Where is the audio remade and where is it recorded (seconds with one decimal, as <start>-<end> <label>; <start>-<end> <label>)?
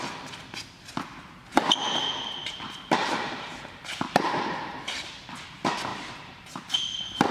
0.0-2.4 recorded; 2.4-5.2 remade; 5.2-5.9 recorded; 5.9-6.7 remade; 6.7-7.3 recorded